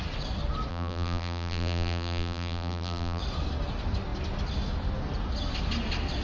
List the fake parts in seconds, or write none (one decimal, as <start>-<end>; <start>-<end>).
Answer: 0.7-3.2